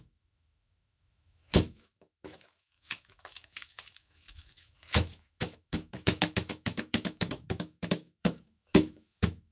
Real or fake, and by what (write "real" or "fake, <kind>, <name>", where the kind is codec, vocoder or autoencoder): fake, autoencoder, DAC-VAE